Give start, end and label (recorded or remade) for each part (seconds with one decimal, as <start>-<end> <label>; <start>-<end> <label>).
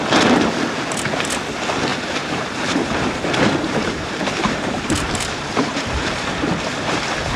0.0-1.9 recorded; 1.9-6.3 remade; 6.3-7.4 recorded